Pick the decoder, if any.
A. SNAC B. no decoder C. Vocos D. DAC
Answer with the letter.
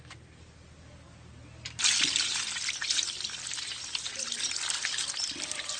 B